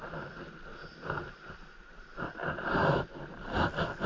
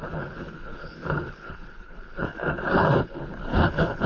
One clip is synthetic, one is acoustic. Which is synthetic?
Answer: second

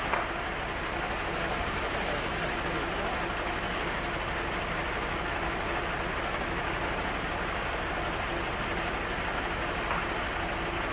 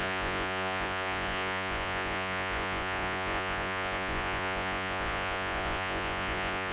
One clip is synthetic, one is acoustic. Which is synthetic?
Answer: second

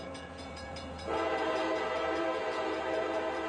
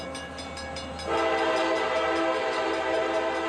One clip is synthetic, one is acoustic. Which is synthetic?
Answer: first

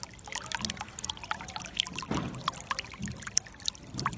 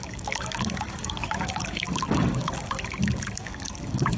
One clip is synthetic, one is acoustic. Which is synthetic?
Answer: second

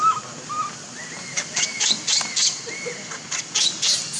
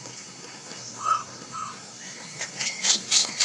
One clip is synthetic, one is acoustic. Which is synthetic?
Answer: second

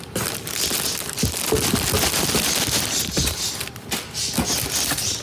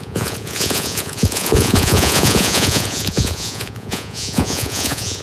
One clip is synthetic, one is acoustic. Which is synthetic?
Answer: second